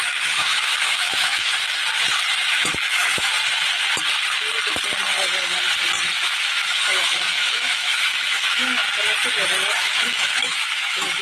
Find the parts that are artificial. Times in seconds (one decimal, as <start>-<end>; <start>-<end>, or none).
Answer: 0.0-1.5; 2.5-3.3; 6.2-8.8; 9.7-11.2

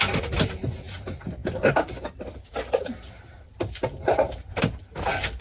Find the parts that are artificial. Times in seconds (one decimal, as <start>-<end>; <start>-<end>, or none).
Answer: none

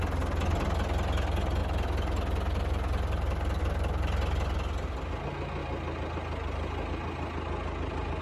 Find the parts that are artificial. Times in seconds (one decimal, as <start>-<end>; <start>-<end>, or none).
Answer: none

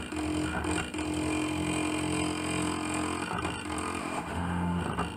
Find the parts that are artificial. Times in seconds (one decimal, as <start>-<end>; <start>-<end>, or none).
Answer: 4.0-4.8

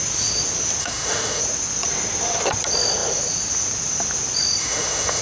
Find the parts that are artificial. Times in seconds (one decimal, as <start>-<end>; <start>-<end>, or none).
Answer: 0.8-1.4; 4.6-5.2